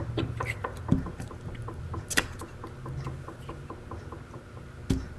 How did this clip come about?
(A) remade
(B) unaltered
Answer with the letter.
B